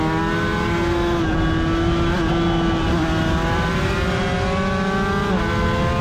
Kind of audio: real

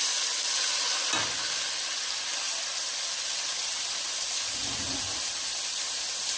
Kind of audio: real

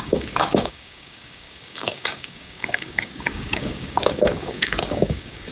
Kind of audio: fake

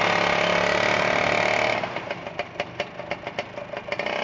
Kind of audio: real